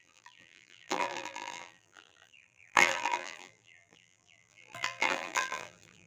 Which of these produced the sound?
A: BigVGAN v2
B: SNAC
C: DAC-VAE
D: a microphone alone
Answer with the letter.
A